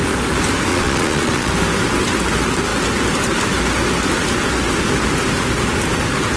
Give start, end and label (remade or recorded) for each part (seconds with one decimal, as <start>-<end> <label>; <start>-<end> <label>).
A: 0.0-0.7 recorded; 0.7-1.5 remade; 1.5-6.4 recorded